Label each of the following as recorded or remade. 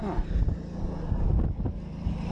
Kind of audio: recorded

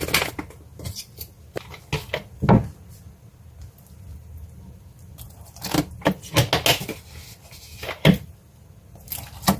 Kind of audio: recorded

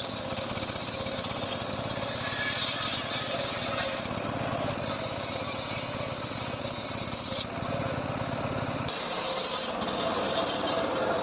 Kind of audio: recorded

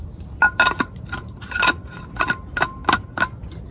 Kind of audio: remade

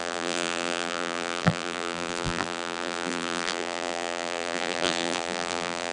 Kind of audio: remade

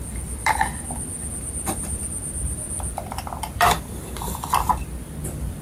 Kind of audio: remade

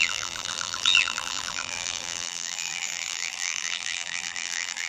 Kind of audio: remade